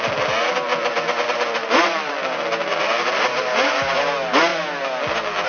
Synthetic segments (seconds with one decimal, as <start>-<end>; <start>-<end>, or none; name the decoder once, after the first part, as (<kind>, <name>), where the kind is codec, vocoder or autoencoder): 0.7-4.0 (vocoder, BigVGAN v2)